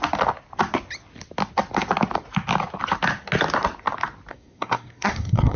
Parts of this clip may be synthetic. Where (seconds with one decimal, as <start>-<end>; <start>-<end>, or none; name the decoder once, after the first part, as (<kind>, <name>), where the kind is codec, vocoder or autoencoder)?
4.3-5.6 (codec, SNAC)